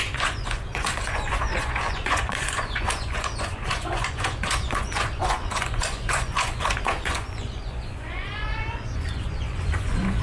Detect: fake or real fake